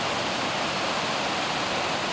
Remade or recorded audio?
recorded